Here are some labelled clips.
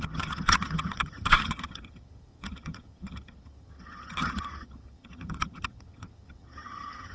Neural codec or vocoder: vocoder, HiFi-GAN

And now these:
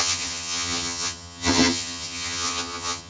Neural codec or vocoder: vocoder, HiFi-GAN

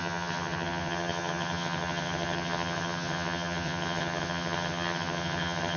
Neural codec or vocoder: vocoder, HiFi-GAN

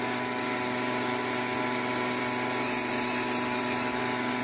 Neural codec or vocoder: none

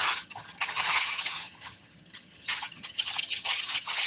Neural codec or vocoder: vocoder, HiFi-GAN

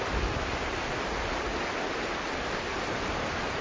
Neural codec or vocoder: none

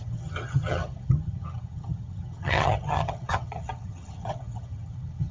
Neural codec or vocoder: vocoder, HiFi-GAN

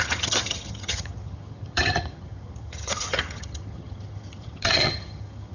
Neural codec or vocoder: vocoder, HiFi-GAN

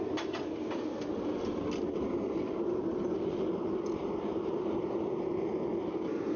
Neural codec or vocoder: none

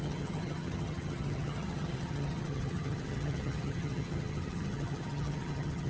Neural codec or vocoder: vocoder, HiFi-GAN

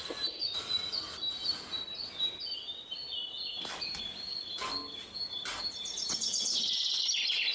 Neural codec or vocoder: none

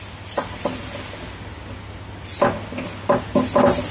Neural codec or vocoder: none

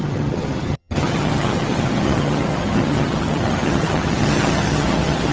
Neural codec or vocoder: vocoder, HiFi-GAN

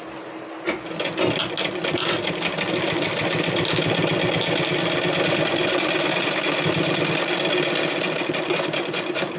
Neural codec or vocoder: none